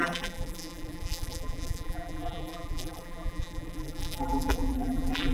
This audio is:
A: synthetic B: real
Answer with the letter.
A